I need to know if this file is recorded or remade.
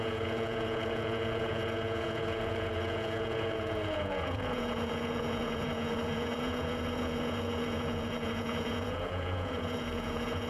remade